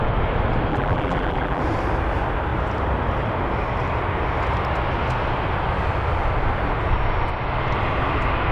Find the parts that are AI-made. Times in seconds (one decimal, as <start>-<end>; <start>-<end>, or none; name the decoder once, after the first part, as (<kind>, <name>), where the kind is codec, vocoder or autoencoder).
0.7-1.6 (vocoder, BigVGAN v2)